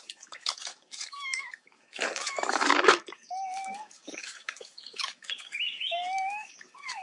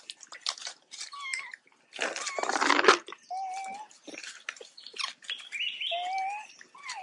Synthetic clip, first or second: first